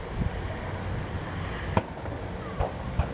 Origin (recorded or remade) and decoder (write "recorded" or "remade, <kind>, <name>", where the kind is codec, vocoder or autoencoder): recorded